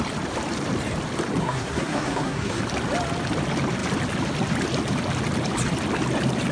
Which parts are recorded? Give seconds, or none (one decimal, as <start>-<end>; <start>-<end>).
0.0-1.4; 2.6-6.5